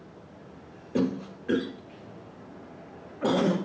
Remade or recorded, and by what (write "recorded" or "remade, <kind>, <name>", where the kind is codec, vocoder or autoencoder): recorded